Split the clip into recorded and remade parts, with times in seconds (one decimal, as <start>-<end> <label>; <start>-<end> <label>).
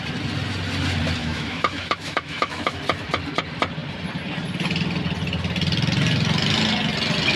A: 0.0-1.2 recorded; 1.2-2.8 remade; 2.8-7.4 recorded